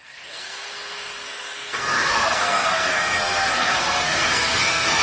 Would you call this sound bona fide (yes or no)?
no